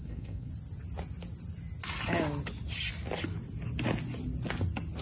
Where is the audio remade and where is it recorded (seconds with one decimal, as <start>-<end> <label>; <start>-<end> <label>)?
0.0-0.5 remade; 0.5-5.0 recorded